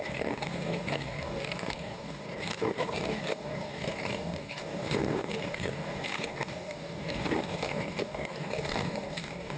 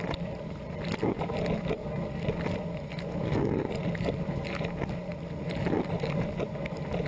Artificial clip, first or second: first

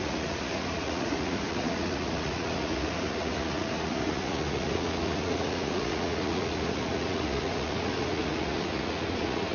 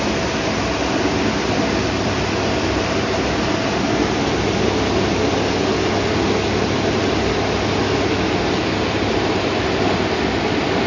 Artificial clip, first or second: first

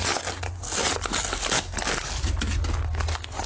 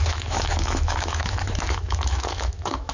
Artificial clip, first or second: second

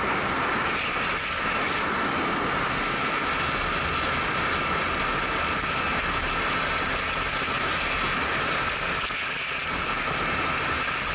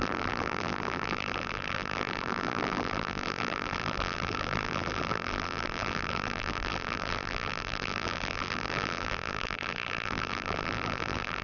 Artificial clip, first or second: second